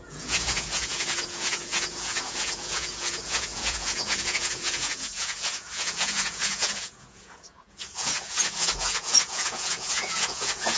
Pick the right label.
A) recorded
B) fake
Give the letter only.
B